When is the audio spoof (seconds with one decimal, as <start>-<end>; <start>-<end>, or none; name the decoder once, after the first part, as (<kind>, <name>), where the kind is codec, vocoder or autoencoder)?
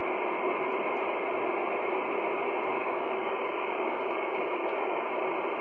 2.7-5.1 (codec, DAC)